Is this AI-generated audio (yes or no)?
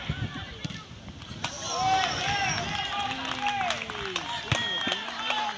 no